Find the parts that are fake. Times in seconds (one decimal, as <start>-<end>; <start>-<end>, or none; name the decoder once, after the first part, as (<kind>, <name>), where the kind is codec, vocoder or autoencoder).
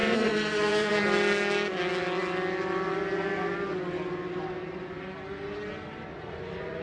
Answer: 0.0-0.9 (vocoder, Vocos); 6.1-6.8